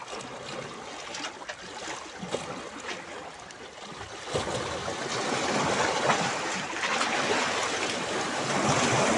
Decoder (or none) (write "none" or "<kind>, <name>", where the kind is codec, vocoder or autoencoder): none